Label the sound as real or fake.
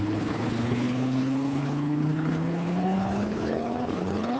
fake